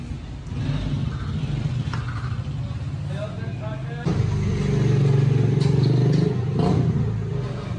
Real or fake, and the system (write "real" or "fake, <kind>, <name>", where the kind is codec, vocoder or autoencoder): real